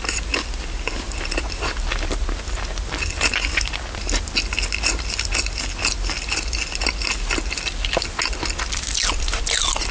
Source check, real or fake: real